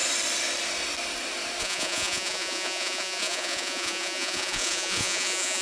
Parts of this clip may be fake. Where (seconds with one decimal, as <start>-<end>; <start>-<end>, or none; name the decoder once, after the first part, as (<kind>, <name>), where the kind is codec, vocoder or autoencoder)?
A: 1.6-5.6 (vocoder, Vocos)